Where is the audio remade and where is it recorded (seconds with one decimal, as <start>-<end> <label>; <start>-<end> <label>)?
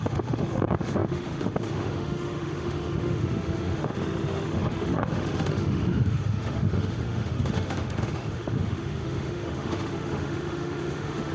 0.0-11.3 remade